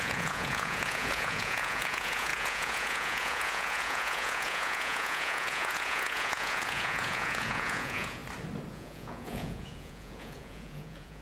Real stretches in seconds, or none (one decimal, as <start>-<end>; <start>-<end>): 8.2-8.7

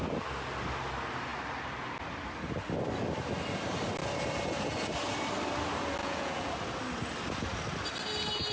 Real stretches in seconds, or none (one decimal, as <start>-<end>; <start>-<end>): 0.0-6.0; 6.5-8.5

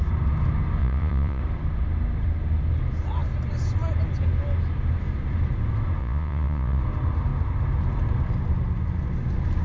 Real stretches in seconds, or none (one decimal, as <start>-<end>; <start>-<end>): 0.0-0.8; 1.4-6.0; 6.8-9.6

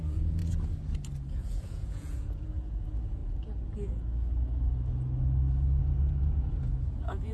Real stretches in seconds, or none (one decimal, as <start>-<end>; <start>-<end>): 0.4-1.3; 3.2-5.8

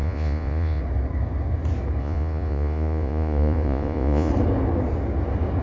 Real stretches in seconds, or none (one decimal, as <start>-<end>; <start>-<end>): 0.8-2.0; 4.3-5.6

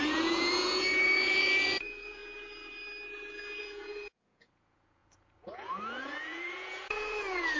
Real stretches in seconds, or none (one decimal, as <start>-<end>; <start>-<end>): 2.2-3.6

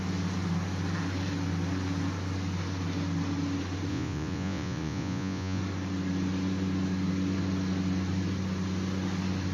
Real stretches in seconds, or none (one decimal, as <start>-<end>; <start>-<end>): 0.0-3.9; 5.6-9.5